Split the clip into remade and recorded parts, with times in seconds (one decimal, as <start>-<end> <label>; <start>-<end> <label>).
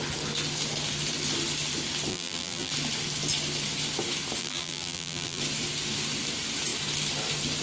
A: 0.0-2.1 recorded; 2.1-2.7 remade; 2.7-4.4 recorded; 4.4-5.4 remade; 5.4-7.6 recorded